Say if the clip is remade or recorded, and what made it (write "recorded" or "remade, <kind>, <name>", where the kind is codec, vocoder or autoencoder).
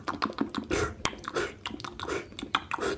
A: recorded